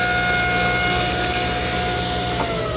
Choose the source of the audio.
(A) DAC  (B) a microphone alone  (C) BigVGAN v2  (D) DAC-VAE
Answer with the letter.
B